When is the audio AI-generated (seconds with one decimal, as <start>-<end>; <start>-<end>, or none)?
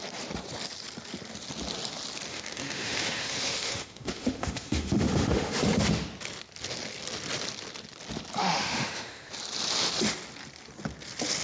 2.3-5.5; 8.4-9.3